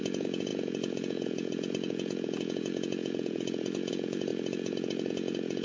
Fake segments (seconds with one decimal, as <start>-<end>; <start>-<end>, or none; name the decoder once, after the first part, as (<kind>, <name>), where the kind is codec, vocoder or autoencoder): 0.0-5.6 (vocoder, Vocos)